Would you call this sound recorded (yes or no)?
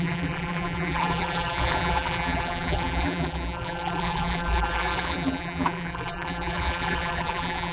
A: no